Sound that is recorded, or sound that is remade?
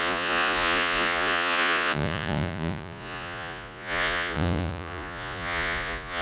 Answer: remade